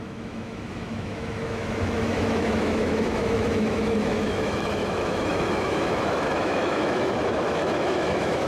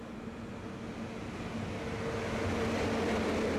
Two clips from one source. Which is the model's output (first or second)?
first